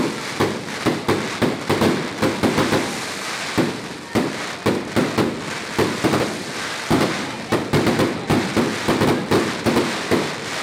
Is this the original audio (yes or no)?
yes